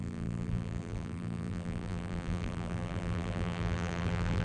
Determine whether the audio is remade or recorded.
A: remade